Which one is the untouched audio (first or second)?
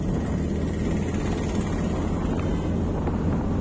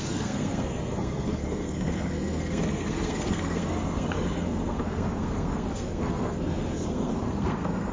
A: first